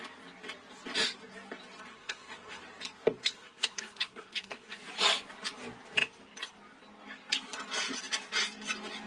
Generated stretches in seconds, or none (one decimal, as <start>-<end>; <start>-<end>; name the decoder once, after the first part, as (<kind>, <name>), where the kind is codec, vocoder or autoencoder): 1.9-2.6 (codec, SNAC); 3.2-4.8